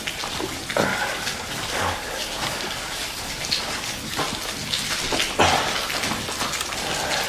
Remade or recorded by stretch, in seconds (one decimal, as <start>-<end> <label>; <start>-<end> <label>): 0.0-0.9 recorded; 0.9-4.1 remade; 4.1-7.3 recorded

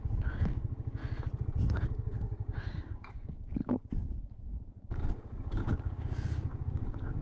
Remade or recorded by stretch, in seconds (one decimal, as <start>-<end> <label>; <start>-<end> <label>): 0.0-1.0 remade; 1.0-1.8 recorded; 1.8-7.2 remade

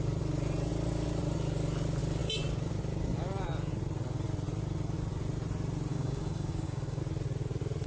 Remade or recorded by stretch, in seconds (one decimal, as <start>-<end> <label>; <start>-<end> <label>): 0.0-5.9 recorded; 5.9-7.0 remade; 7.0-7.9 recorded

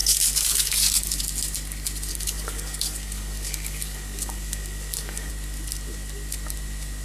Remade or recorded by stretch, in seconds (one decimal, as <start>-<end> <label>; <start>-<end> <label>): 0.0-1.2 remade; 1.2-2.1 recorded; 2.1-5.3 remade; 5.3-7.0 recorded

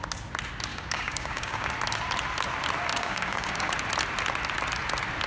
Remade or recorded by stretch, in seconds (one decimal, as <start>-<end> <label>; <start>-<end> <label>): 0.0-0.7 recorded; 0.7-1.7 remade; 1.7-2.9 recorded; 2.9-3.7 remade; 3.7-5.3 recorded

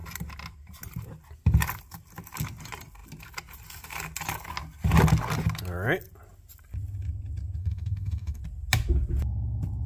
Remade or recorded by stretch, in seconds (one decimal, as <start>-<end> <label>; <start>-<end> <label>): 0.0-7.6 recorded; 7.6-8.4 remade; 8.4-9.9 recorded

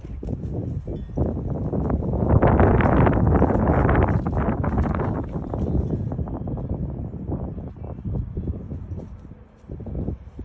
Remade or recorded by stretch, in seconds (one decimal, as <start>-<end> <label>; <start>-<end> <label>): 0.0-10.4 recorded

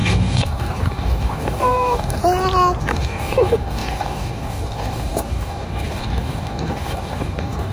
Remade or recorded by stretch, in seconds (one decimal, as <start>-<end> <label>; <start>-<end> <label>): 0.0-2.2 remade; 2.2-2.8 recorded; 2.8-7.7 remade